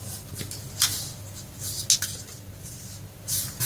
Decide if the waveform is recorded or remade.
recorded